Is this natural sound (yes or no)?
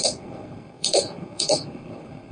no